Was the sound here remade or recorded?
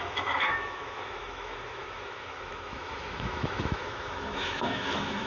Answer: remade